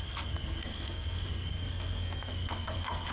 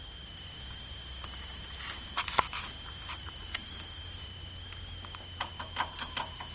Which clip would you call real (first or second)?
second